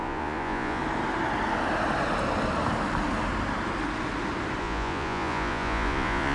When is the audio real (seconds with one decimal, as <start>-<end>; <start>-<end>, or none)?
0.8-4.6